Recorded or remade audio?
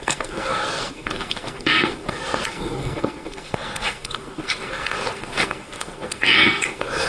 remade